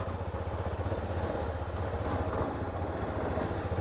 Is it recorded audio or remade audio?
recorded